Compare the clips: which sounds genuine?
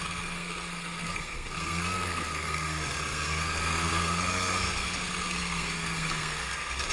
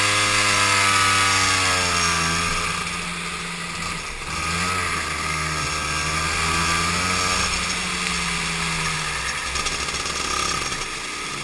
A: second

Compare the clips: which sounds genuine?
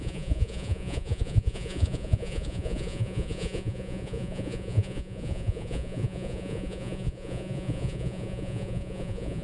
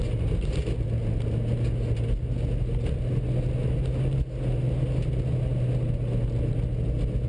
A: second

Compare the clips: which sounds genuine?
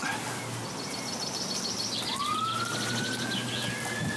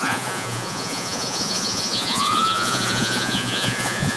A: first